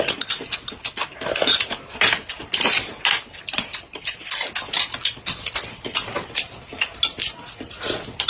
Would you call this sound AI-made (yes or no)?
no